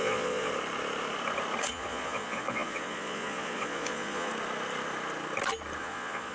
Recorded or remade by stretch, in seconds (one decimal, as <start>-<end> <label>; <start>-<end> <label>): 0.0-0.5 remade; 0.5-1.6 recorded; 1.6-4.3 remade; 4.3-5.8 recorded; 5.8-6.3 remade